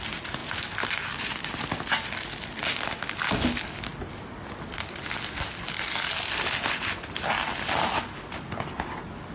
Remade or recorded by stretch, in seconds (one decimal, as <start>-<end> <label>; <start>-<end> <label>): 0.0-9.3 recorded

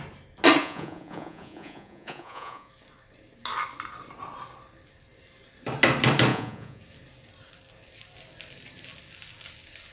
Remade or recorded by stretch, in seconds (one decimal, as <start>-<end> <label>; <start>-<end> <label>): 0.0-0.6 recorded; 0.6-2.7 remade; 2.7-6.3 recorded; 6.3-6.8 remade; 6.8-9.9 recorded

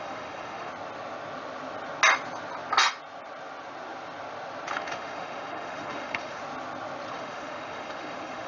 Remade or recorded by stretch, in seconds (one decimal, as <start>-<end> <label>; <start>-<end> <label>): 0.0-0.7 remade; 0.7-4.7 recorded; 4.7-6.4 remade; 6.4-7.1 recorded; 7.1-8.5 remade

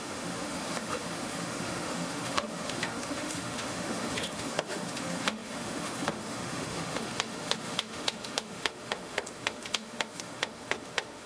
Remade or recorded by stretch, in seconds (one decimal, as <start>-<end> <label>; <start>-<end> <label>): 0.0-11.3 remade

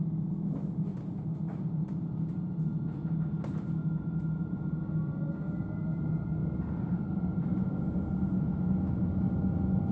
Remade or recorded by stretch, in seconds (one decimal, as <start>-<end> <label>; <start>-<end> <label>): 0.0-0.9 recorded; 0.9-4.9 remade; 4.9-6.4 recorded; 6.4-7.7 remade; 7.7-9.9 recorded